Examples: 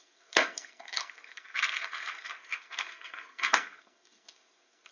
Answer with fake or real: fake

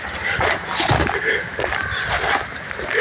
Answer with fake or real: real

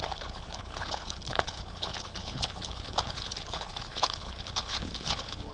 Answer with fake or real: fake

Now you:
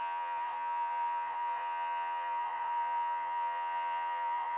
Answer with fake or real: fake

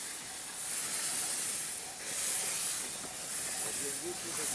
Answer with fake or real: real